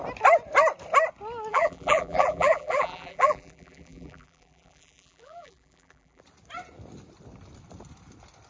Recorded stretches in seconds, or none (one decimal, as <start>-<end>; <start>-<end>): 0.0-1.5; 6.2-8.5